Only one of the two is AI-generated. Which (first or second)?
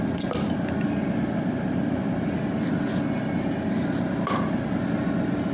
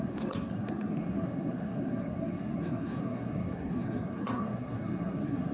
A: second